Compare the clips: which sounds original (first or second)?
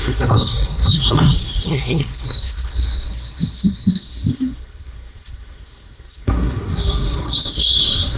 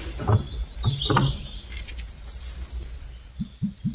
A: second